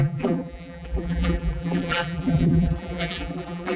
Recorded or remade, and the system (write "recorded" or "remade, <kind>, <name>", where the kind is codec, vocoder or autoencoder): remade, vocoder, BigVGAN v2